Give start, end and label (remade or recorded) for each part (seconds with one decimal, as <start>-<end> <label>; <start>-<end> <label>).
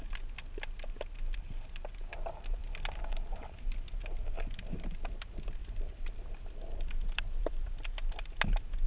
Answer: 0.0-2.6 recorded; 2.6-3.1 remade; 3.1-5.6 recorded; 5.6-7.8 remade; 7.8-8.9 recorded